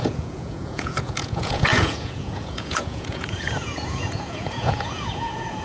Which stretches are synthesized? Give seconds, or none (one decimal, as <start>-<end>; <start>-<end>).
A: 0.0-5.6